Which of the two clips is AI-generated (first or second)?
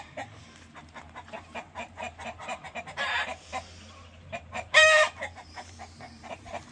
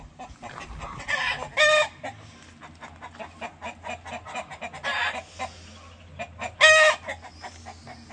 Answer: first